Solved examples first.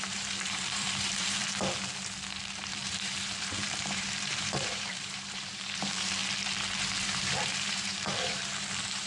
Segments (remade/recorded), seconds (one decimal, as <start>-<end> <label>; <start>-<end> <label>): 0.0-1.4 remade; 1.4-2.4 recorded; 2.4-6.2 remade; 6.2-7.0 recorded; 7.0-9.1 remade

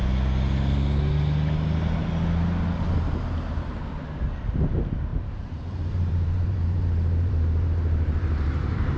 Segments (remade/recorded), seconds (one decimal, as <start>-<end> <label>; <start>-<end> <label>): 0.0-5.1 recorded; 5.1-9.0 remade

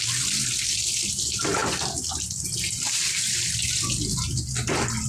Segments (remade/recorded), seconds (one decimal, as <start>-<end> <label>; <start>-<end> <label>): 0.0-5.1 recorded

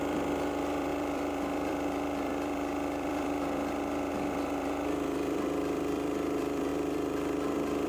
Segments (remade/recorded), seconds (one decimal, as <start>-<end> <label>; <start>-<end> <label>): 0.0-7.9 remade

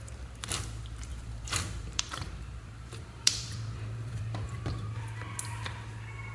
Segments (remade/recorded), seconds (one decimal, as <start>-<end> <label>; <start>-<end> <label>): 0.0-1.1 recorded; 1.1-4.9 remade; 4.9-6.3 recorded

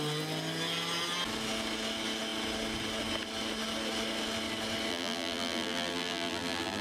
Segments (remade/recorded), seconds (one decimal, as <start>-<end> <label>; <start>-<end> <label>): 0.0-4.9 recorded; 4.9-6.8 remade

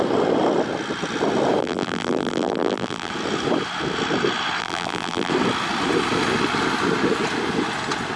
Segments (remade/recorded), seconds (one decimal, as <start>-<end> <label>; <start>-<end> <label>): 0.0-1.6 recorded; 1.6-3.1 remade; 3.1-4.6 recorded; 4.6-5.3 remade; 5.3-8.2 recorded

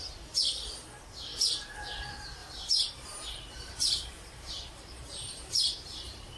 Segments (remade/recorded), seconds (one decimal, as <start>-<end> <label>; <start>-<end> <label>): 0.0-1.3 recorded; 1.3-2.0 remade; 2.0-2.4 recorded; 2.4-6.4 remade